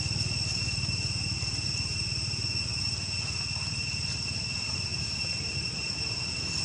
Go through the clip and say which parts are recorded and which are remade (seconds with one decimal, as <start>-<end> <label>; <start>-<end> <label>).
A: 0.0-6.6 recorded